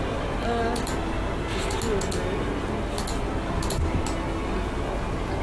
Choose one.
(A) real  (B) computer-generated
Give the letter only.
A